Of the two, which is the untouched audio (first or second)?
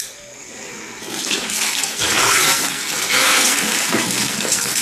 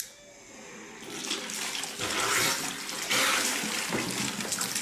second